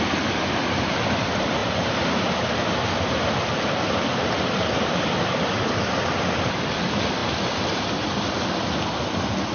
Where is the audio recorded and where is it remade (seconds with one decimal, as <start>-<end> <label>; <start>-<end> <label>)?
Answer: 0.0-9.5 recorded